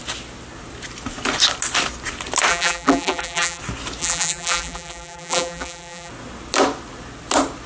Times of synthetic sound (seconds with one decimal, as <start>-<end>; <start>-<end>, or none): 2.5-3.6; 4.0-6.1